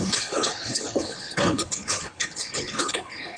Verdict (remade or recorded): remade